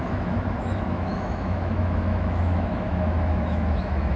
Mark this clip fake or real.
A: fake